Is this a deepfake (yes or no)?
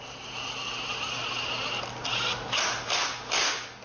no